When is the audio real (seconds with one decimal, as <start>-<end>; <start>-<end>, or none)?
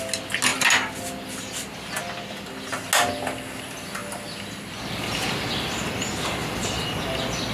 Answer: 0.0-7.5